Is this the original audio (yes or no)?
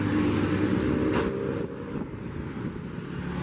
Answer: yes